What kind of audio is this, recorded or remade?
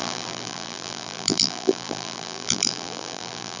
remade